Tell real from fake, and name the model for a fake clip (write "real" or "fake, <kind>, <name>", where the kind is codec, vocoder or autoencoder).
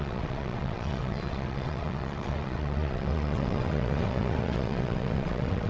fake, vocoder, WaveNeXt